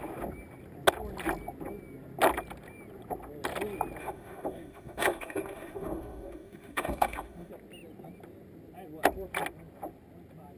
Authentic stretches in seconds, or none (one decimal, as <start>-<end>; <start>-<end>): 0.0-4.0; 7.5-10.6